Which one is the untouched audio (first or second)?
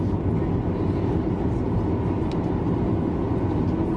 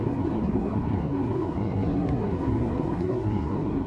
first